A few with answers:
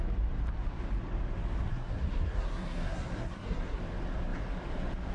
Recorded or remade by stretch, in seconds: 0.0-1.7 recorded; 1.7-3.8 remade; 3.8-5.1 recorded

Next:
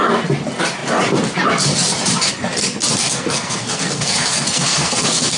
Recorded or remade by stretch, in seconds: 0.0-3.0 recorded; 3.0-5.4 remade

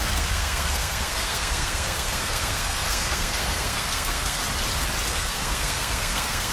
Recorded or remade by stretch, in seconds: 0.0-4.4 remade; 4.4-5.1 recorded; 5.1-6.5 remade

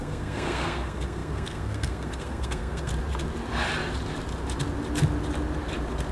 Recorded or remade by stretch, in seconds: 0.0-2.9 remade; 2.9-6.1 recorded